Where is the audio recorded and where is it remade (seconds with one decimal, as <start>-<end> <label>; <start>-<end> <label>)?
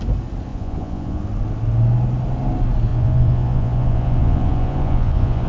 0.0-0.5 recorded; 0.5-1.2 remade; 1.2-2.9 recorded; 2.9-5.5 remade